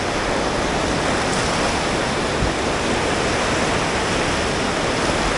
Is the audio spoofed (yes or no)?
no